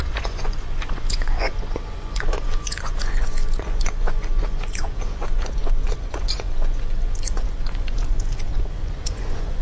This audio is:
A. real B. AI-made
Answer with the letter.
B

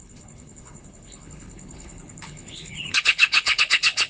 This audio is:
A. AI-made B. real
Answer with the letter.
A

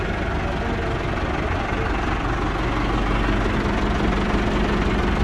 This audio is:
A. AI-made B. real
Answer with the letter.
B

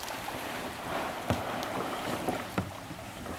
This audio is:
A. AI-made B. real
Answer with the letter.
A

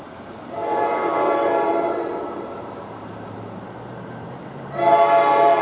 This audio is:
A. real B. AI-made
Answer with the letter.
B